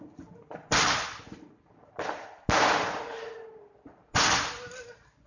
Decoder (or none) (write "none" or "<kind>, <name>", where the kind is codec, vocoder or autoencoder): none